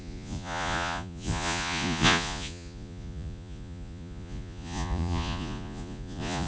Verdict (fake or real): fake